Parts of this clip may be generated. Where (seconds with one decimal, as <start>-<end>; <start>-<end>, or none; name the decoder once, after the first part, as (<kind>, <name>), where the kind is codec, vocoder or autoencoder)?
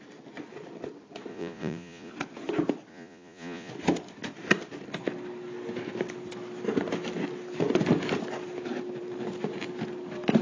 1.3-2.1 (vocoder, Vocos); 2.9-3.7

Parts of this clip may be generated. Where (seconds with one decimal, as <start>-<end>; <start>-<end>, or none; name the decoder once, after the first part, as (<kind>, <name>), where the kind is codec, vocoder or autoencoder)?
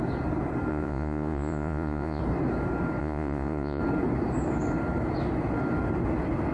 0.7-2.2 (vocoder, Vocos); 3.0-3.8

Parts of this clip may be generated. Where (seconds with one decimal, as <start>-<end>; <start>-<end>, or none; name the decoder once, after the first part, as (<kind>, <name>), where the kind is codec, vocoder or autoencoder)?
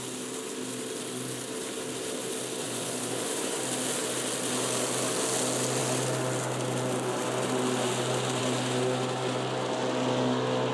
2.6-3.6 (vocoder, Vocos)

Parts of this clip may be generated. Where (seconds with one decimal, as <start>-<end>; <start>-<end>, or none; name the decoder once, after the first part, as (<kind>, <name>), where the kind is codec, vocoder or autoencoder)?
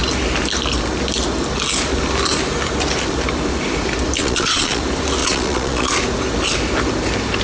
4.2-4.8 (vocoder, Vocos); 5.2-5.9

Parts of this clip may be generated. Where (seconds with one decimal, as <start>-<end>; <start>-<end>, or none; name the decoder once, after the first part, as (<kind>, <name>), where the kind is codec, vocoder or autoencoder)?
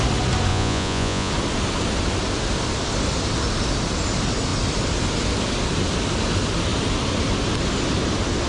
0.5-1.3 (vocoder, Vocos)